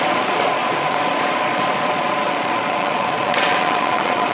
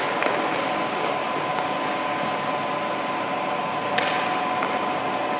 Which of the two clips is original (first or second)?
second